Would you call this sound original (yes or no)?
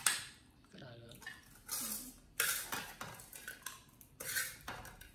yes